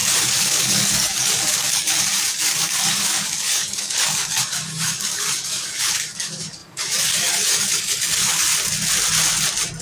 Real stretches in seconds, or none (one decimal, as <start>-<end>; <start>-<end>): 8.5-9.8